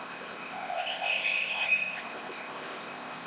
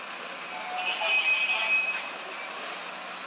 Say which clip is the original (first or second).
second